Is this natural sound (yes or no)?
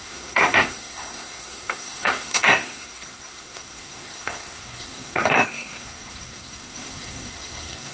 no